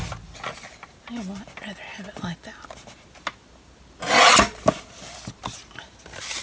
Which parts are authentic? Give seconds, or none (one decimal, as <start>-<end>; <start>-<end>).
0.0-6.4